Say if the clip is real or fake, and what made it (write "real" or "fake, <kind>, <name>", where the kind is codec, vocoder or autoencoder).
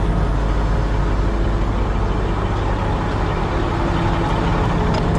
real